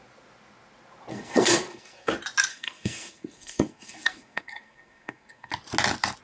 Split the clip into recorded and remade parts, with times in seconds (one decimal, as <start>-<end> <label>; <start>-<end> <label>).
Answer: 0.0-1.1 recorded; 1.1-2.1 remade; 2.1-2.5 recorded; 2.5-5.5 remade; 5.5-6.2 recorded